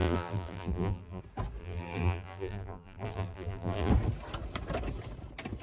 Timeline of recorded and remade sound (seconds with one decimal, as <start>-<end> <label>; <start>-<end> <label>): 0.0-1.2 remade; 1.2-1.6 recorded; 1.6-3.9 remade; 3.9-5.6 recorded